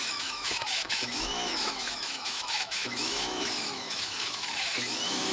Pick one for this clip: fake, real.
fake